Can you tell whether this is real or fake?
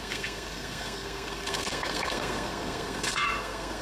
fake